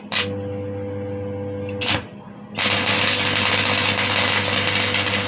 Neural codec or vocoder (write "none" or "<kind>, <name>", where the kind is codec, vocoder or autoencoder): none